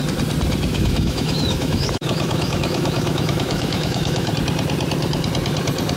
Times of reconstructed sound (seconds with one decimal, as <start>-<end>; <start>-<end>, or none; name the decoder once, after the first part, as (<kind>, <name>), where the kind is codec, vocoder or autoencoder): 0.7-4.3 (autoencoder, DAC-VAE)